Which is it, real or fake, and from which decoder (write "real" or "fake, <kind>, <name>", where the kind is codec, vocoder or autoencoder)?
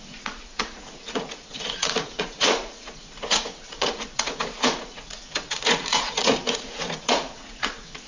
fake, vocoder, Vocos